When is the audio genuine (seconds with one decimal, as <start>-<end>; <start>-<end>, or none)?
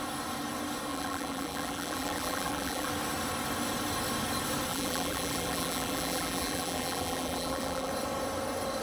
0.0-0.9; 2.9-4.7; 7.9-8.8